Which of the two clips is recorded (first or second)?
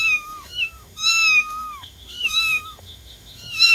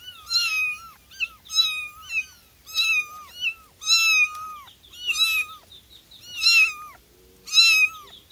second